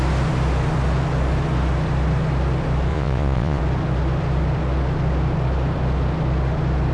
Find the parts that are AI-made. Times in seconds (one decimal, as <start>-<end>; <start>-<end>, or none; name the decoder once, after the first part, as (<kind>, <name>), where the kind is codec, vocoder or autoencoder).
2.9-3.6 (vocoder, Vocos)